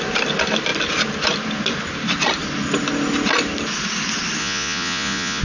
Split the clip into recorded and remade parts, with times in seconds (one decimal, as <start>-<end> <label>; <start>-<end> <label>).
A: 0.0-4.4 recorded; 4.4-5.4 remade